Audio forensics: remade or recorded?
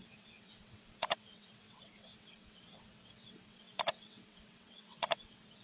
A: remade